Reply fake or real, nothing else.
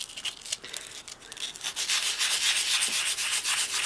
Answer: real